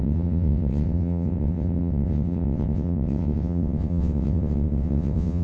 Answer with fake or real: fake